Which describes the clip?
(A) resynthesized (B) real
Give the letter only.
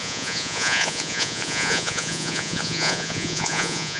A